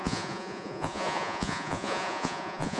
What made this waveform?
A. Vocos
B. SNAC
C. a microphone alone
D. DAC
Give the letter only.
A